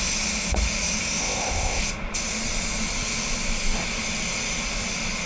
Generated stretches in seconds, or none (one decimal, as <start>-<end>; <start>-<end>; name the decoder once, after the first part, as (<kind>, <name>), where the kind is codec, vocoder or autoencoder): 1.2-1.8 (codec, ZipCodec)